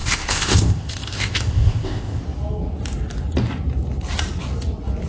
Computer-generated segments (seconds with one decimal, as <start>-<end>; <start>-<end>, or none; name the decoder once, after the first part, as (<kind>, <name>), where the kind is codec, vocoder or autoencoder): 0.0-2.2 (codec, ZipCodec)